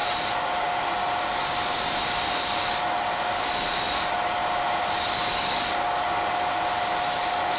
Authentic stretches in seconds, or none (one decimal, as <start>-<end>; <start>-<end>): 0.0-7.6